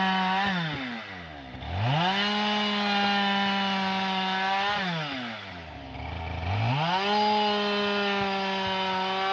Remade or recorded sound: recorded